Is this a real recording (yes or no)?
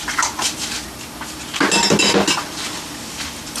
yes